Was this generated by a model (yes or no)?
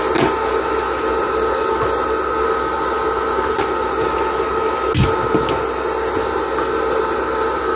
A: no